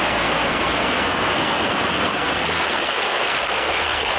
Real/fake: fake